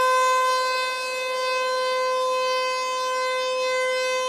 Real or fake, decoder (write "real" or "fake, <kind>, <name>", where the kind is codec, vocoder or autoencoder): real